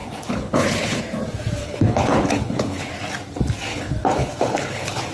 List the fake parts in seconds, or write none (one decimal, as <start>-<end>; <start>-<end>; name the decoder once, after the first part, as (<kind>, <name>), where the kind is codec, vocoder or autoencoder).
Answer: 0.0-1.0 (codec, HILCodec); 1.6-2.9; 3.7-5.1